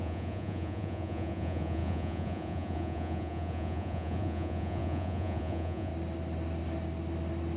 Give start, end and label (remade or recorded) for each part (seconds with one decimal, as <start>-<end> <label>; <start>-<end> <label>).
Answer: 0.0-5.9 remade; 5.9-7.6 recorded